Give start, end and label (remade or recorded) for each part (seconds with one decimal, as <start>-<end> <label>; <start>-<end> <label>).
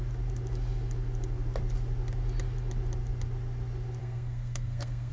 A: 0.0-4.0 recorded; 4.0-5.1 remade